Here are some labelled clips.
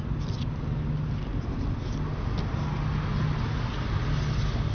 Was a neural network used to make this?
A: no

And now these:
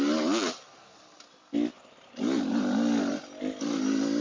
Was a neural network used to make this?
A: no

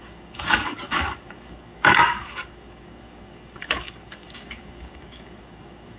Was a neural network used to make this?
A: yes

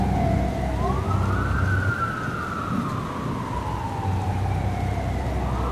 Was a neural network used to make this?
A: no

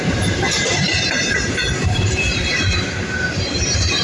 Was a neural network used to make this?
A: yes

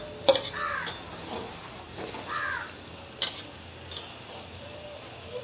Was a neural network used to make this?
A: no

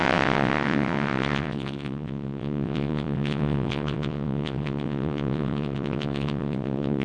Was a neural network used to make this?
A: yes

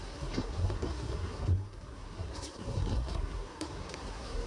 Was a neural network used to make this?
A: yes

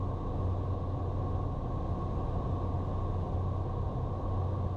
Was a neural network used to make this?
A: no